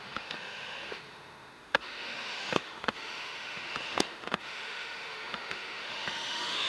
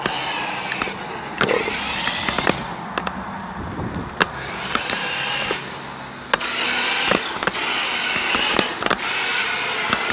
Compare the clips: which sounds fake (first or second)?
first